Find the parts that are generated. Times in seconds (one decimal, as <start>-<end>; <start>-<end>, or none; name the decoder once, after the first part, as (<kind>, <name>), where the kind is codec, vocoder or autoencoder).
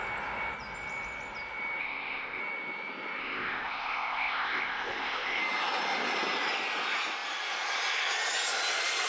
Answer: 1.8-2.4 (codec, ZipCodec); 3.2-5.4